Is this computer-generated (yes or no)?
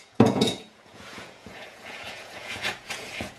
yes